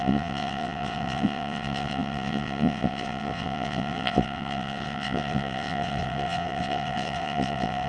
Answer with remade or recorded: remade